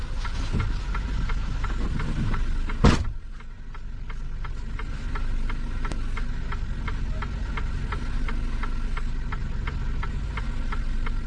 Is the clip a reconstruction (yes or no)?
no